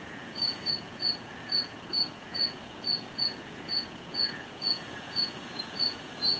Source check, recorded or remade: remade